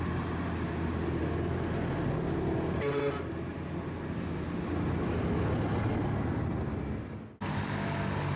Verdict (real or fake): real